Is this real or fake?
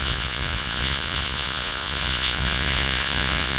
fake